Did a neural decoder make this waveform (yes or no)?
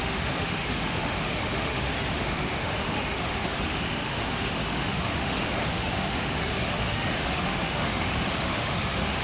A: yes